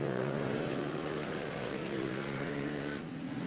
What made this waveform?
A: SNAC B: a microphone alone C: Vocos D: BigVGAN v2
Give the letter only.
C